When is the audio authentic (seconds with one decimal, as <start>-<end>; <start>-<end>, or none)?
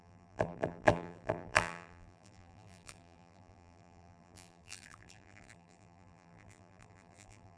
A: none